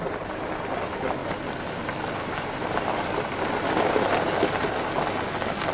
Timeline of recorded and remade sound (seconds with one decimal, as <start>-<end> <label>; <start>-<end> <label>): 0.0-5.7 recorded